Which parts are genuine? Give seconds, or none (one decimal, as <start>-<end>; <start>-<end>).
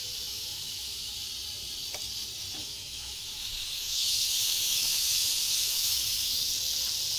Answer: 1.1-2.6; 6.5-7.2